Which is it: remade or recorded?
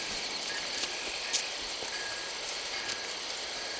recorded